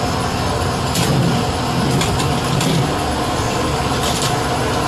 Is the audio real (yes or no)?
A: yes